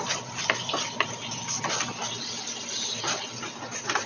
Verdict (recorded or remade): recorded